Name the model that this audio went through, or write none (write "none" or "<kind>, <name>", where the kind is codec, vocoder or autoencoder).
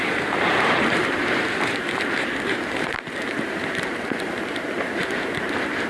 vocoder, BigVGAN v2